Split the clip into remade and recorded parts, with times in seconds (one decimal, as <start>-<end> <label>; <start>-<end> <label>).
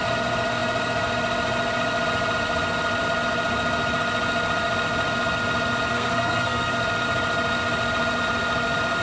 0.0-5.9 recorded; 5.9-6.7 remade; 6.7-9.0 recorded